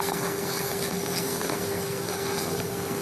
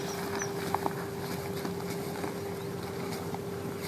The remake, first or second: first